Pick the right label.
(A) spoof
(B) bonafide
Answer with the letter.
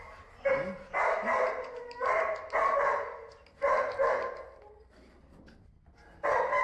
B